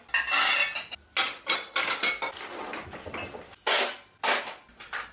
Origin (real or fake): real